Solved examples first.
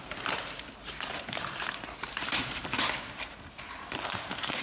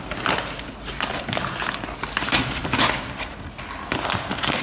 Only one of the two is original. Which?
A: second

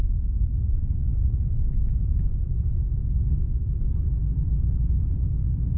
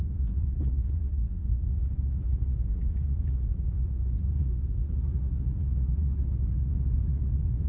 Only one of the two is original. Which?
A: first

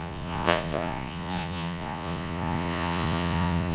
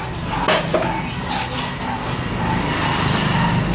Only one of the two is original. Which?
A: second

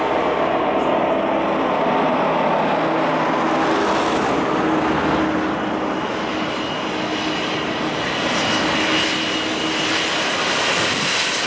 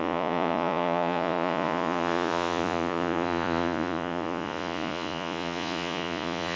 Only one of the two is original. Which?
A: first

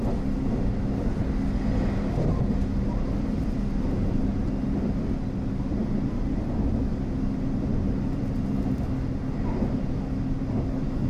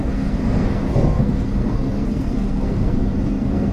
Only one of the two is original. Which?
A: first